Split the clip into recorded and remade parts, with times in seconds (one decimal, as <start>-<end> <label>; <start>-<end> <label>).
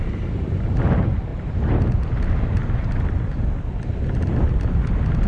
0.0-1.3 recorded; 1.3-2.0 remade; 2.0-5.3 recorded